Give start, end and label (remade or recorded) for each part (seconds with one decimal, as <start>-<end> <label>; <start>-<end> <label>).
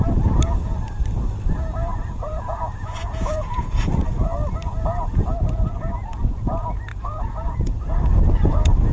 0.0-1.9 recorded; 1.9-3.8 remade; 3.8-6.9 recorded; 6.9-7.8 remade; 7.8-8.9 recorded